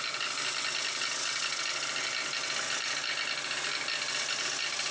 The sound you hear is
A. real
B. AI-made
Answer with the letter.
A